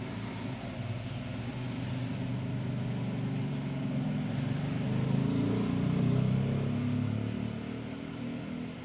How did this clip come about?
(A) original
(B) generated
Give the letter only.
A